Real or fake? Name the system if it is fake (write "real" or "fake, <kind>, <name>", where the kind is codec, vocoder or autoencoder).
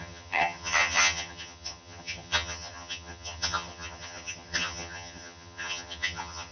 fake, vocoder, HiFi-GAN